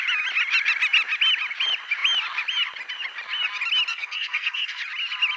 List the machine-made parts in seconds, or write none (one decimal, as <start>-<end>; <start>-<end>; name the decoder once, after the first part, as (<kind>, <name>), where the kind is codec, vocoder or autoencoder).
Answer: 3.9-4.8 (codec, SNAC)